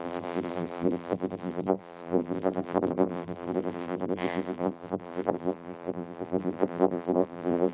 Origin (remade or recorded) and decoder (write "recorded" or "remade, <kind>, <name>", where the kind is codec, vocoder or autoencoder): remade, vocoder, BigVGAN v2